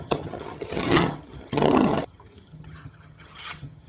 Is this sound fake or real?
fake